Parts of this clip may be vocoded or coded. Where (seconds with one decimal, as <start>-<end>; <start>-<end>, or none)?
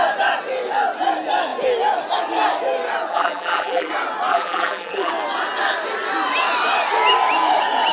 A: 3.1-3.9; 4.3-5.1